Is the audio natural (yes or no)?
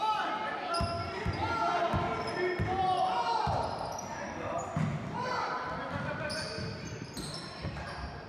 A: yes